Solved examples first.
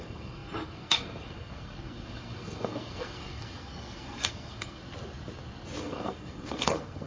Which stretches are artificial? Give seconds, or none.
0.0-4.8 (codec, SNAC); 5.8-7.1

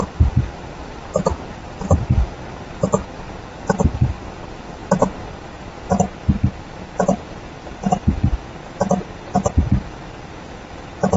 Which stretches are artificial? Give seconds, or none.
4.8-7.9 (vocoder, BigVGAN v2)

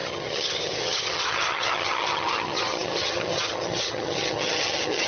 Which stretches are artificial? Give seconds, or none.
0.0-5.1 (vocoder, HiFi-GAN)